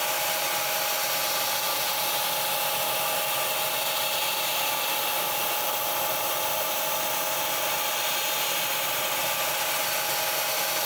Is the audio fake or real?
real